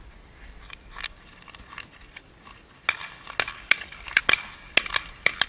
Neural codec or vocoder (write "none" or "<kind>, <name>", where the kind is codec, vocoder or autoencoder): none